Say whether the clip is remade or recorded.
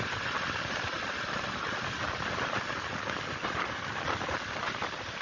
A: remade